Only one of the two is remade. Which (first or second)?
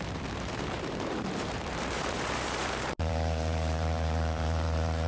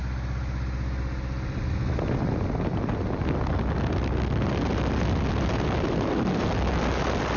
first